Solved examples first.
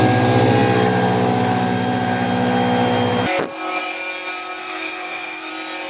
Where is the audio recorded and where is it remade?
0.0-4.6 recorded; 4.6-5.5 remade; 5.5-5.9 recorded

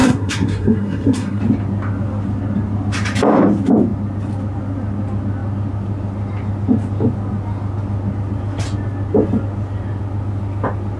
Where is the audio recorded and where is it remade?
0.0-1.4 remade; 1.4-11.0 recorded

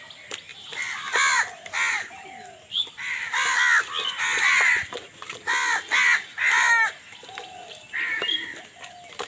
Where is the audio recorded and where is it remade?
0.0-9.3 recorded